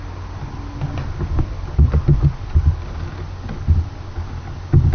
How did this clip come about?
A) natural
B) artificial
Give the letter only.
A